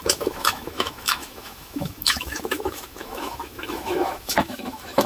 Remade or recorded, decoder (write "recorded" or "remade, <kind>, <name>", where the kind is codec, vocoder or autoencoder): remade, autoencoder, DAC-VAE